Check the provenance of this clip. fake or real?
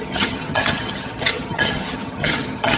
fake